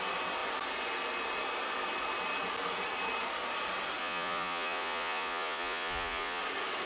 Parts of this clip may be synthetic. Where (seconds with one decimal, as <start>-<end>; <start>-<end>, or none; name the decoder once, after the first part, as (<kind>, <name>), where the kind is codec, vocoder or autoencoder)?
4.0-6.4 (vocoder, Vocos)